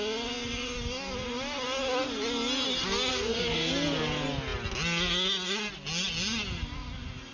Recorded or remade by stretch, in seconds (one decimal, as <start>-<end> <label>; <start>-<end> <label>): 0.0-3.1 recorded; 3.1-3.7 remade; 3.7-7.3 recorded